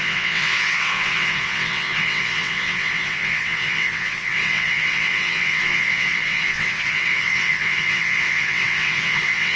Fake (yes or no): yes